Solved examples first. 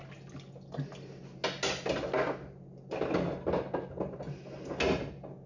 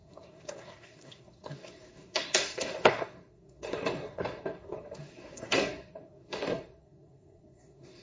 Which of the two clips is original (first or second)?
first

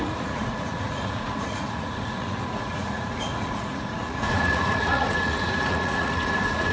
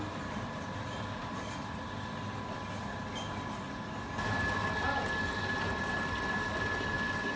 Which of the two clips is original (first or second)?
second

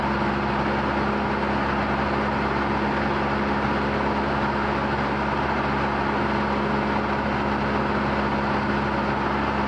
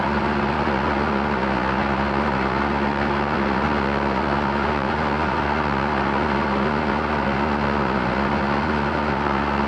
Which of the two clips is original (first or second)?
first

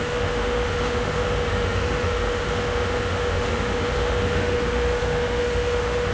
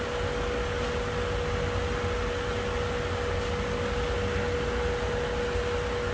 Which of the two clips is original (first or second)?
second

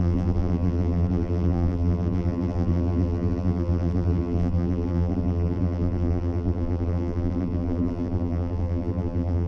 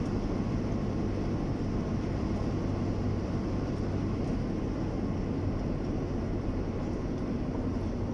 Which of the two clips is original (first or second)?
second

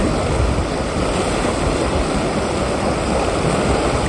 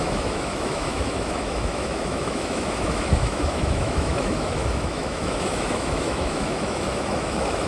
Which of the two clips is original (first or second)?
first